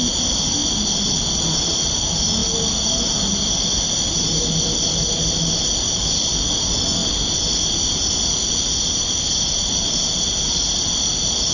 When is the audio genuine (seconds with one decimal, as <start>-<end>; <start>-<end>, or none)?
0.0-11.5